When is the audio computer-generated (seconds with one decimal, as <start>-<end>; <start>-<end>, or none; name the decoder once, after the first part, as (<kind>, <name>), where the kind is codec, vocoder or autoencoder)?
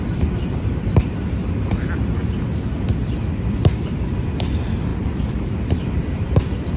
0.0-2.2 (vocoder, BigVGAN v2); 3.4-6.8